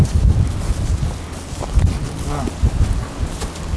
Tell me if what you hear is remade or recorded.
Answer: recorded